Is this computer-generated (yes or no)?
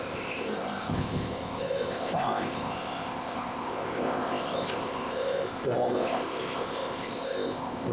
yes